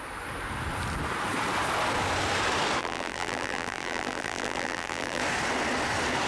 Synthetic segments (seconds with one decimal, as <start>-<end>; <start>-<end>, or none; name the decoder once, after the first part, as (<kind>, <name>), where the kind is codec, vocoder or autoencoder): 2.8-5.2 (vocoder, BigVGAN v2)